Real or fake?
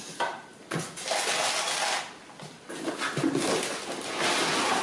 real